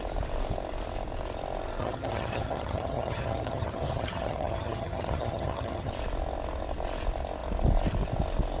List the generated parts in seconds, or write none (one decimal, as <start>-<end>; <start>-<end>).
1.8-5.9